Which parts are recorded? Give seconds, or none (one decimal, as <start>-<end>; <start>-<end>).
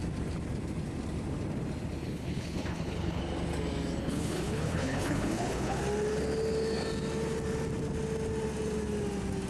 0.0-2.0; 3.2-4.0; 5.8-9.5